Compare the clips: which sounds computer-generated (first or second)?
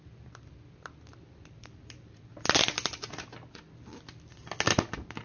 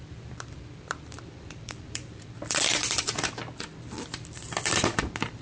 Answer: second